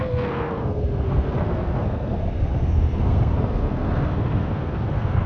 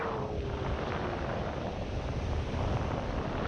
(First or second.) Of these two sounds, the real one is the second